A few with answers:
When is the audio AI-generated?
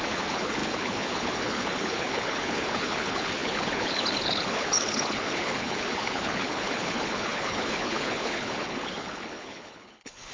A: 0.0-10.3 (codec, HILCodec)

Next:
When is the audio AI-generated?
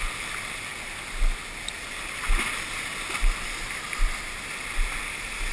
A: none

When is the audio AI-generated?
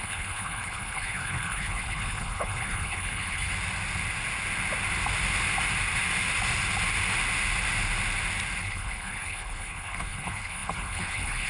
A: 0.0-3.5 (codec, HILCodec); 8.6-11.5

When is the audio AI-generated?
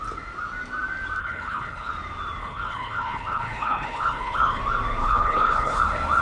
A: 1.2-1.9 (codec, HILCodec); 2.4-4.6; 5.0-5.8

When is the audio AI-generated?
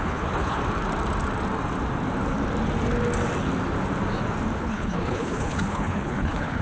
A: 0.0-0.6 (codec, HILCodec); 4.6-6.6